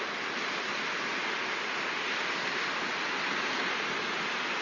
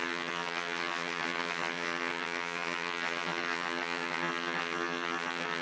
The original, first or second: first